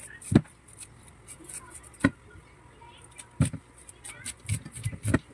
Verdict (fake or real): real